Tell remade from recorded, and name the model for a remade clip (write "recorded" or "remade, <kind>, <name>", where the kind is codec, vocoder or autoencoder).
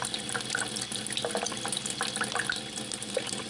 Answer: recorded